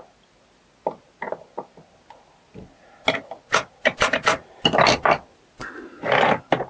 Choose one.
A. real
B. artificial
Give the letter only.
A